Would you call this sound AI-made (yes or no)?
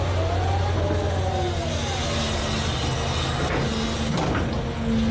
no